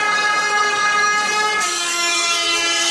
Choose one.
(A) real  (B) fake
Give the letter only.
B